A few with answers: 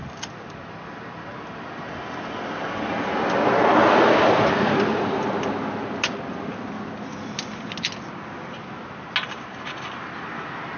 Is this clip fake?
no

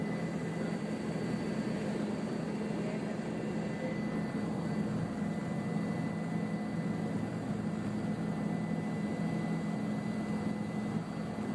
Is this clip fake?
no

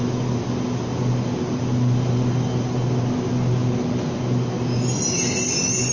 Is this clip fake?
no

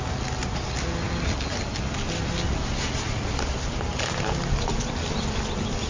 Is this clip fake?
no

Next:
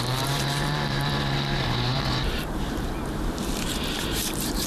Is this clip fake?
yes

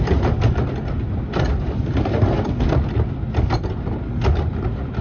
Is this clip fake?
no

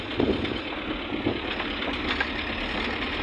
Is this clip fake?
no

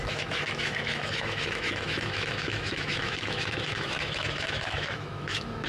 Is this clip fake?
yes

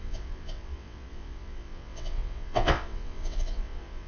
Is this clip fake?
yes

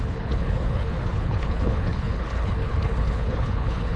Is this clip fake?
yes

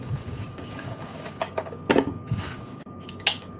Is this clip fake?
yes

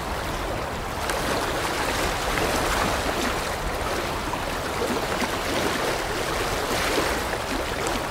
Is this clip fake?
no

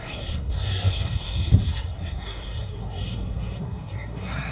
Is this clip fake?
yes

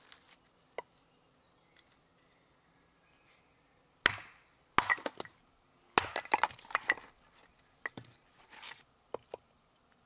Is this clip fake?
no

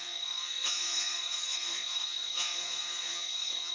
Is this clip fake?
yes